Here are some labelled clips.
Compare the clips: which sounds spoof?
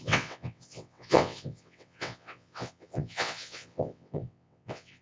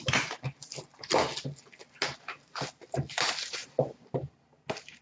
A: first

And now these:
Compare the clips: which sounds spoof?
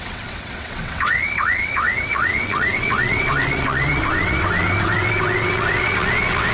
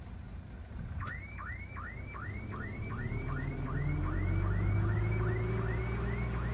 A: first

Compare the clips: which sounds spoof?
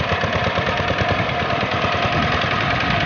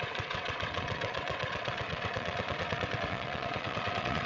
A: second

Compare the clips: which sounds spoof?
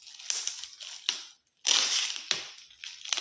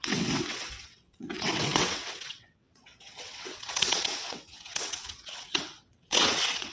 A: second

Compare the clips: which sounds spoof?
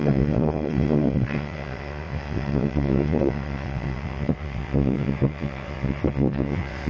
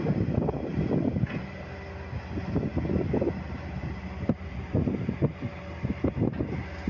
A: first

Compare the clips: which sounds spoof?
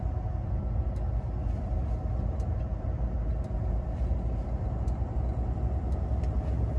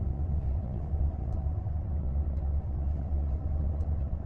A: second